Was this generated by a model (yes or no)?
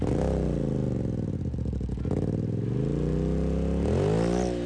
no